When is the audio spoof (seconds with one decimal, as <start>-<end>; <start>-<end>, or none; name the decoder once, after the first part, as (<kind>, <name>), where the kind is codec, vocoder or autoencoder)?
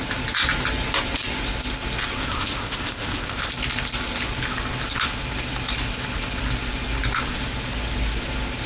2.2-3.5 (codec, ZipCodec)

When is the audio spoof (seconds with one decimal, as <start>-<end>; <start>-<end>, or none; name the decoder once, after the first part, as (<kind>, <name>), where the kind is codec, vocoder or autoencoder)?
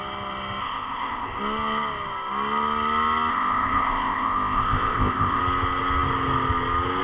0.6-1.4 (codec, ZipCodec); 3.3-5.4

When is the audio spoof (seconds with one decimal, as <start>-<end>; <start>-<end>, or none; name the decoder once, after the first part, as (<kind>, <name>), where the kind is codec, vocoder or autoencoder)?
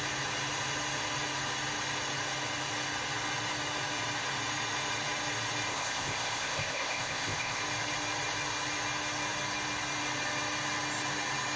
5.7-7.6 (codec, ZipCodec)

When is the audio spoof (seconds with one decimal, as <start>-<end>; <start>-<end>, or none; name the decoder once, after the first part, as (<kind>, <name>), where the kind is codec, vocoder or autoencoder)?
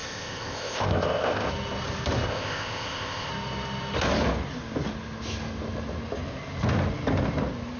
0.0-1.5 (codec, ZipCodec); 2.3-3.3